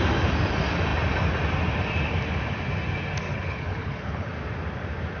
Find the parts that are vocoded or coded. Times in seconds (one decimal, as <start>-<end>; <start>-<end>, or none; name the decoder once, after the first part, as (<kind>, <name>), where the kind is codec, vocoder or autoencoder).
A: 3.3-4.3 (codec, HILCodec)